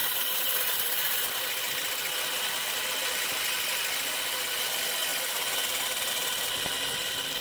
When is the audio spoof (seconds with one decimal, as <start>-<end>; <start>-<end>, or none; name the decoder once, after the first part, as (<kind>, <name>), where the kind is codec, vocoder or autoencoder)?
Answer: 0.0-7.4 (vocoder, BigVGAN v2)